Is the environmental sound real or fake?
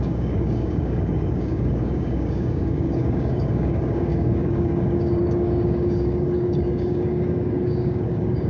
fake